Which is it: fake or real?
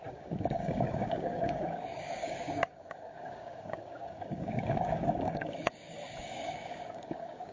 fake